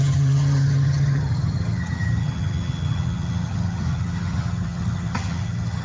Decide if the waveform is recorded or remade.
remade